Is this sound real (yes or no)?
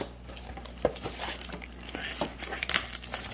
yes